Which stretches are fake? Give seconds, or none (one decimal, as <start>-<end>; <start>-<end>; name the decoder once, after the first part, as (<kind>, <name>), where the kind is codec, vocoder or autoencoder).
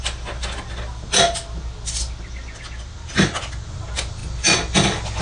none